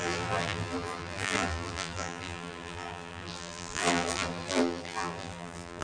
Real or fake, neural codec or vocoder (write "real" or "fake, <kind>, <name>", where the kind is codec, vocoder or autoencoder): fake, vocoder, BigVGAN v2